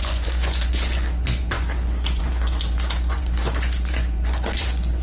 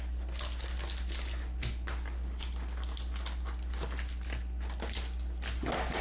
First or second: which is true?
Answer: second